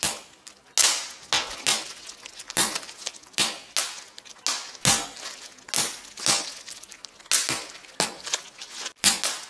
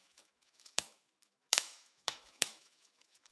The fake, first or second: second